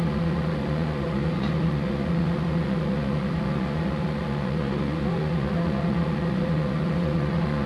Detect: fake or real fake